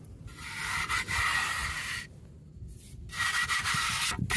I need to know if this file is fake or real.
real